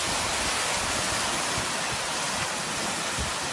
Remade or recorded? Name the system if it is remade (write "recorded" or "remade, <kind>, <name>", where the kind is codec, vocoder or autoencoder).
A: recorded